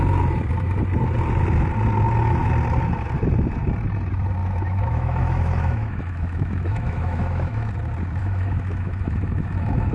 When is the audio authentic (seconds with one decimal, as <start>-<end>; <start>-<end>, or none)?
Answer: 0.0-4.4; 7.7-8.2